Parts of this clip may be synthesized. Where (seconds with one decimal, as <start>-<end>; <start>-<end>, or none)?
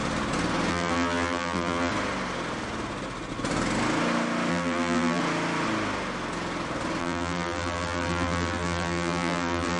0.7-1.9; 4.5-5.2; 7.0-9.8